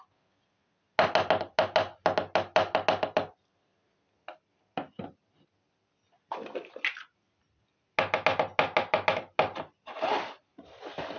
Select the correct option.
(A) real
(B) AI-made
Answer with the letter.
A